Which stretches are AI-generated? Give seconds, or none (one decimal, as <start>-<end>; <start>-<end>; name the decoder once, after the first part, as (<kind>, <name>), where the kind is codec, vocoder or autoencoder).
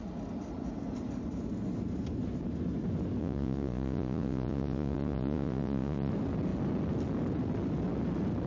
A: 3.2-6.1 (vocoder, Vocos)